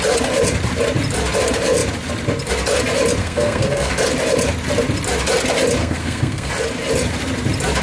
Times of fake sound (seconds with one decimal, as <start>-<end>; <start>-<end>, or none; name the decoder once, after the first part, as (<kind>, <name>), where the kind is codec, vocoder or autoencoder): 3.2-3.9 (codec, SNAC); 5.8-6.5

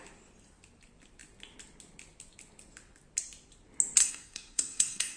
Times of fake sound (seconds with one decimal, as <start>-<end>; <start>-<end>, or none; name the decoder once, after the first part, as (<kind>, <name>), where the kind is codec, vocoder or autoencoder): 4.0-5.2 (codec, SNAC)